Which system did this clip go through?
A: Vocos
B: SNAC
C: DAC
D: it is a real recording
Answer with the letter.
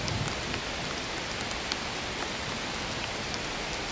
D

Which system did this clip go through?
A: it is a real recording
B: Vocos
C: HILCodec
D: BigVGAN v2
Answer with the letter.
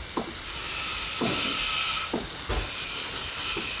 A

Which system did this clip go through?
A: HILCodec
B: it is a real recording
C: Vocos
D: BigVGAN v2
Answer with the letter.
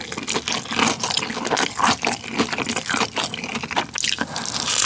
B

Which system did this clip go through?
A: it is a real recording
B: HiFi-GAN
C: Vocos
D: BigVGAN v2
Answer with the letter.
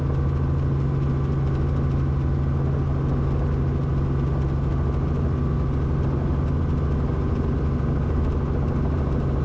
A